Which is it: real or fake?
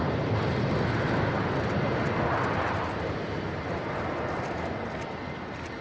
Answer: real